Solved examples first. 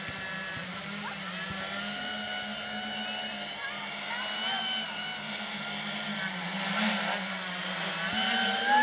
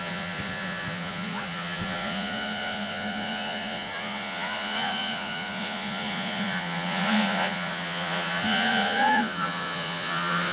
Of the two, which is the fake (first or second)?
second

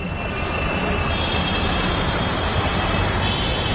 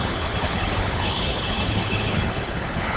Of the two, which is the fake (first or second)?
second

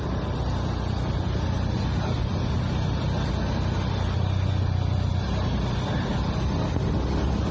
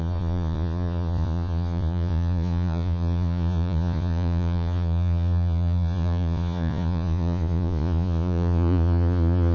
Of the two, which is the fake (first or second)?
second